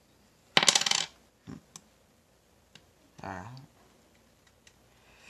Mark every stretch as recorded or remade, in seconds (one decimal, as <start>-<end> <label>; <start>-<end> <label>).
0.0-5.3 recorded